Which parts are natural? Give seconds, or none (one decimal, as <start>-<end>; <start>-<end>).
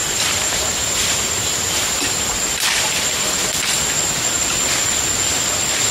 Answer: 3.1-5.9